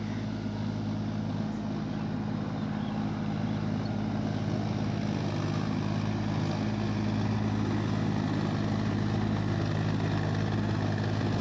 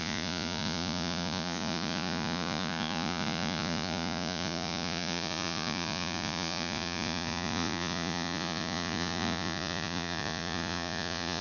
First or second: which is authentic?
first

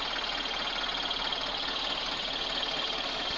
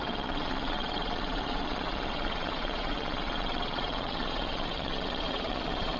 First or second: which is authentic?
first